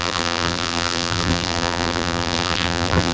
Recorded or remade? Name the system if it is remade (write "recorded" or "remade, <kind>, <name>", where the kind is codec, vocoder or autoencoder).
remade, vocoder, BigVGAN v2